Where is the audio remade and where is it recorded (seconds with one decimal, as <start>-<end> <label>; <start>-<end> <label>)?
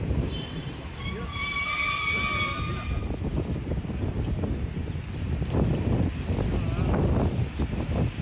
0.0-8.2 recorded